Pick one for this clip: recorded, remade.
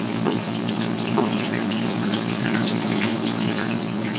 remade